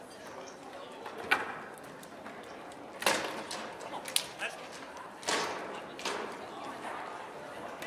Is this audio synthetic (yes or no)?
no